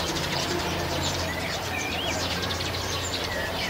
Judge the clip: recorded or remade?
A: remade